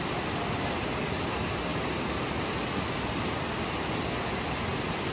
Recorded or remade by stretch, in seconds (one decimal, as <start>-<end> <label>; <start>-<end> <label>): 0.0-5.1 recorded